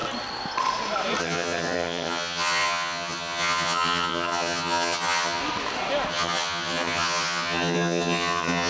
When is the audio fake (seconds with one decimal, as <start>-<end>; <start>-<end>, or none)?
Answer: 1.2-5.4; 6.1-8.7